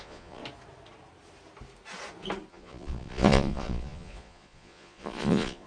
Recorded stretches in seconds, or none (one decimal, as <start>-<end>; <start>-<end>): 0.4-2.5